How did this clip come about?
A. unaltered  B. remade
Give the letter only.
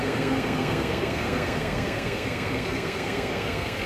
B